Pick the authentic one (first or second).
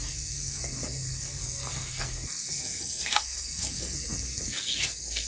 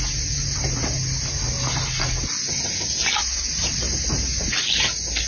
second